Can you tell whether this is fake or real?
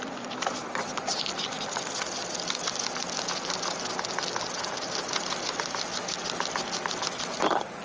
real